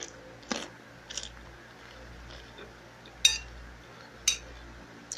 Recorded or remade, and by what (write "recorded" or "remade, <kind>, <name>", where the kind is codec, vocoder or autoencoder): recorded